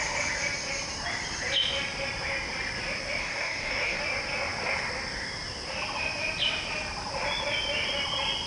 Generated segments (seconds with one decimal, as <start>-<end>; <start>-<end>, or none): 3.2-4.0